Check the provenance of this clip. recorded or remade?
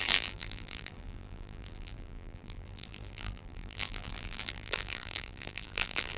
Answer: remade